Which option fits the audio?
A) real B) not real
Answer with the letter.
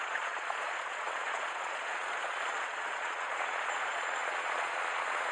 B